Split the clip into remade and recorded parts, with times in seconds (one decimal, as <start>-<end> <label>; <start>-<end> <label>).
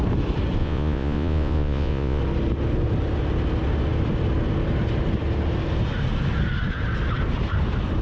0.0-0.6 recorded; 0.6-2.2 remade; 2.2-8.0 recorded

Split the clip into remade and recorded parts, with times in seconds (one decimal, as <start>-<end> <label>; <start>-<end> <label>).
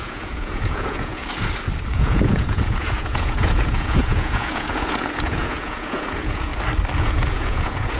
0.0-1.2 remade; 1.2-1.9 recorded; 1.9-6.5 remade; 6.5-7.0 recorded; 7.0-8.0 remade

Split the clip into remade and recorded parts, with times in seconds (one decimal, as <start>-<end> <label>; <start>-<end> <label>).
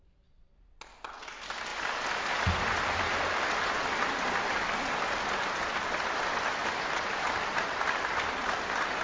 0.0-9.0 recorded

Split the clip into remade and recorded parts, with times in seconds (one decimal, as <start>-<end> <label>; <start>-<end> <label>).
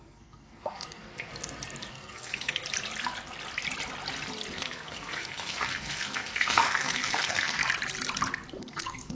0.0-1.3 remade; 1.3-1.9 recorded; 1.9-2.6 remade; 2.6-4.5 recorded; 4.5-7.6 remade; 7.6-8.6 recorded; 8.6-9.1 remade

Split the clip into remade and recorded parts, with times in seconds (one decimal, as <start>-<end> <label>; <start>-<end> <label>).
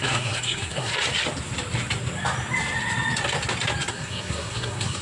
0.0-0.9 remade; 0.9-3.9 recorded; 3.9-5.0 remade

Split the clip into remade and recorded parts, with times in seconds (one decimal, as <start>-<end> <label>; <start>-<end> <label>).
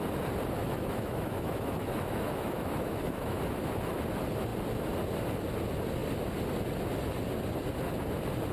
0.0-0.6 recorded; 0.6-3.4 remade; 3.4-8.5 recorded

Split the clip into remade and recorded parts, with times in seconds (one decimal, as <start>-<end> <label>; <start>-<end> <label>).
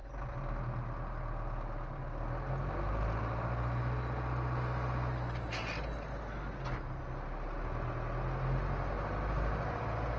0.0-10.2 recorded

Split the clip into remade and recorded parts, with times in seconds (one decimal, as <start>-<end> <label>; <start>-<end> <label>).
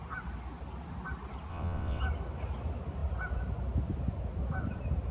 0.0-1.5 recorded; 1.5-2.0 remade; 2.0-5.1 recorded